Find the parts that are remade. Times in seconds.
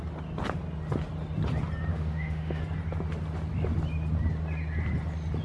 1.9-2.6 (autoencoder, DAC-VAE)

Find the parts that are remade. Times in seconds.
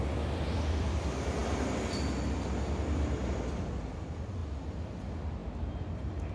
none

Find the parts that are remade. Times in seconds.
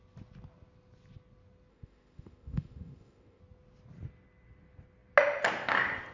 1.7-3.4 (autoencoder, DAC-VAE)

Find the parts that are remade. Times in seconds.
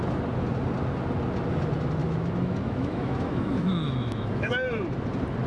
2.0-4.5 (autoencoder, DAC-VAE)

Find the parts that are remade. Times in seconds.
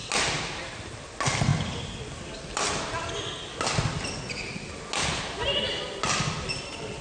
none